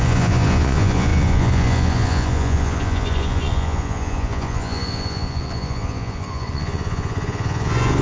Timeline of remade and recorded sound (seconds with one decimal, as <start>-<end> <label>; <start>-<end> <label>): 0.0-8.0 remade

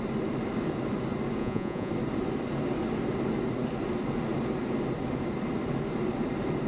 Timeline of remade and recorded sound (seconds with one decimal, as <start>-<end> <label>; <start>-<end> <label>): 0.0-1.4 recorded; 1.4-1.9 remade; 1.9-6.7 recorded